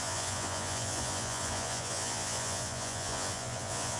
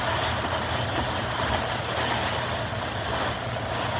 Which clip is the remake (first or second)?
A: first